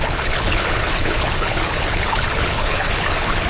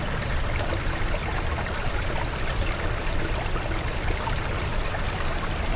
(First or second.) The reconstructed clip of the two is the first